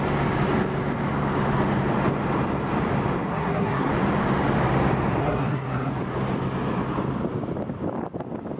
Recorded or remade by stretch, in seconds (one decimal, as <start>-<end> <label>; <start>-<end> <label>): 0.0-3.3 recorded; 3.3-3.9 remade; 3.9-5.2 recorded; 5.2-5.9 remade; 5.9-8.6 recorded